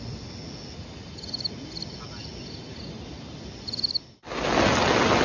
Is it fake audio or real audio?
real